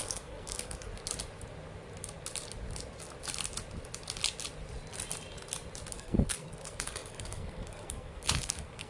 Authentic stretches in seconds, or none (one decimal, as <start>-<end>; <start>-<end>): 0.9-5.9